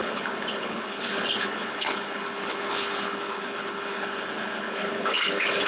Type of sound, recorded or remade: remade